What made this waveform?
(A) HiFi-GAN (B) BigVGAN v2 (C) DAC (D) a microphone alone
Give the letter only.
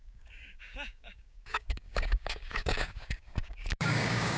C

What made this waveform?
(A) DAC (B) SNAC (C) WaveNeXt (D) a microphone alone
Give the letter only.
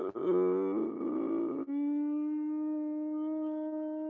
D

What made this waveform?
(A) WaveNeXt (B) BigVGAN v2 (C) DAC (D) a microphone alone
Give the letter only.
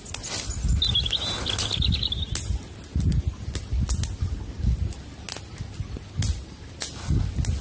D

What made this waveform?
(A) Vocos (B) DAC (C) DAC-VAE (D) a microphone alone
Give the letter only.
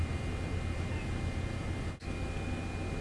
D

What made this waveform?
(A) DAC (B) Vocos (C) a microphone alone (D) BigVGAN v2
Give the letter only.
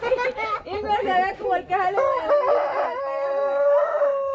C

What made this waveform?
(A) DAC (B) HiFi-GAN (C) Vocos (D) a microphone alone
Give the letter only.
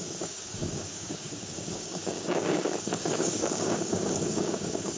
A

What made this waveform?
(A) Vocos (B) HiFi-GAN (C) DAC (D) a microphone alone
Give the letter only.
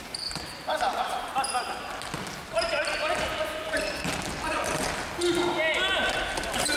D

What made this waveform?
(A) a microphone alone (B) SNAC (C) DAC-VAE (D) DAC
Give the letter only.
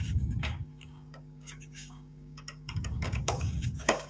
D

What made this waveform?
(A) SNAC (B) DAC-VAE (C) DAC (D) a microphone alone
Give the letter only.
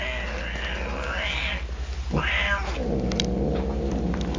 D